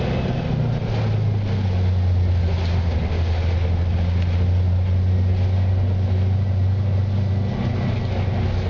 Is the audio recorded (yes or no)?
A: yes